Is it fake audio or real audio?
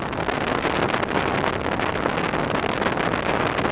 real